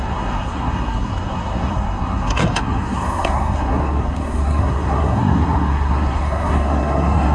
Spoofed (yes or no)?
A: yes